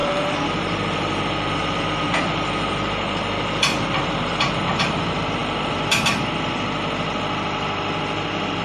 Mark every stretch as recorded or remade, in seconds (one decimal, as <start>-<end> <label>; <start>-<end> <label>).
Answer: 0.0-4.8 remade; 4.8-8.6 recorded